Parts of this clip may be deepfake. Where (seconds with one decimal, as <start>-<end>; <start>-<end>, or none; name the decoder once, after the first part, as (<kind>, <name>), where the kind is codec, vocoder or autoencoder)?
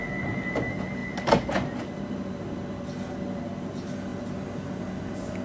none